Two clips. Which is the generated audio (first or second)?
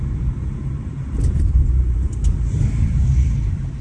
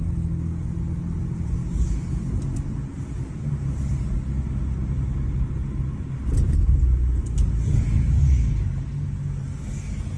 first